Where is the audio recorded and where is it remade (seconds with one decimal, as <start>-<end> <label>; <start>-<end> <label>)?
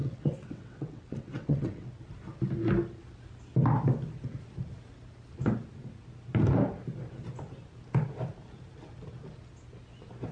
0.0-1.9 remade; 1.9-10.3 recorded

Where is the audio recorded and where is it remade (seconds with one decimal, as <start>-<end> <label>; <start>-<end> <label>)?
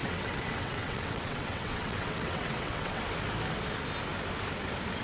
0.0-3.0 remade; 3.0-5.0 recorded